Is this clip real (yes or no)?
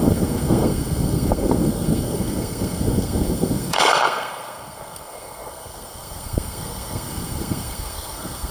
no